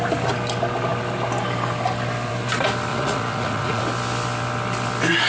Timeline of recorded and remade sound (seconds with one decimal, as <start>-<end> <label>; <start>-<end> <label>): 0.0-2.9 recorded; 2.9-3.8 remade; 3.8-5.3 recorded